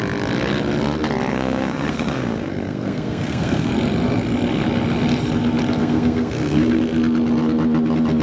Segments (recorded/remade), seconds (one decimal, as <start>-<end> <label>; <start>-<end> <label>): 0.0-1.3 recorded; 1.3-3.7 remade; 3.7-5.8 recorded; 5.8-6.8 remade; 6.8-8.2 recorded